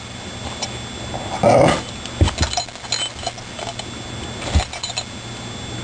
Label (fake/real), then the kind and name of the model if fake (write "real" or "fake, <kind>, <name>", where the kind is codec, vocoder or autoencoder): real